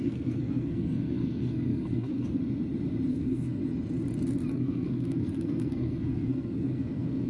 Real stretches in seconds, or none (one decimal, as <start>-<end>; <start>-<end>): 2.4-3.1; 3.6-4.5